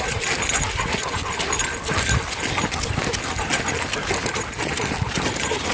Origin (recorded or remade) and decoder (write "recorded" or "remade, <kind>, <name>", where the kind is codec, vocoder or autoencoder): recorded